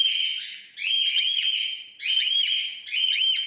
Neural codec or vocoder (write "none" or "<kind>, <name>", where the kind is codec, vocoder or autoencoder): none